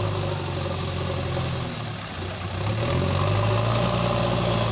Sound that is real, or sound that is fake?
real